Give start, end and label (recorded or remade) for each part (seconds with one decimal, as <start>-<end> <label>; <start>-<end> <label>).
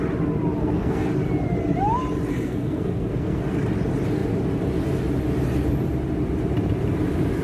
0.0-0.6 recorded; 0.6-1.1 remade; 1.1-2.3 recorded; 2.3-3.6 remade; 3.6-7.4 recorded